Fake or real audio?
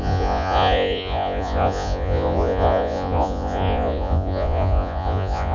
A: fake